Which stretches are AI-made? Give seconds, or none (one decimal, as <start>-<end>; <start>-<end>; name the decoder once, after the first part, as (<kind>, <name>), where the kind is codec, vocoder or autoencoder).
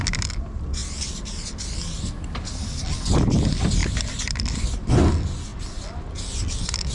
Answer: none